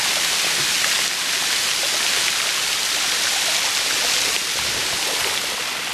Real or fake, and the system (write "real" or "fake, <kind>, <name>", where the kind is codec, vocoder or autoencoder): real